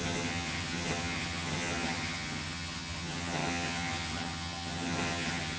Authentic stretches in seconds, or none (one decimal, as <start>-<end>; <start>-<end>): none